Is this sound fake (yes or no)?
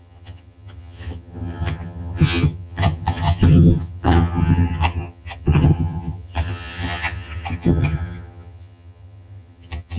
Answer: yes